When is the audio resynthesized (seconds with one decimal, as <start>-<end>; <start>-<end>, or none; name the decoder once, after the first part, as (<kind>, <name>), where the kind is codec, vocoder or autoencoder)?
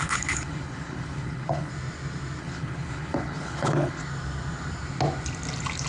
0.0-1.7 (codec, HILCodec); 2.4-4.0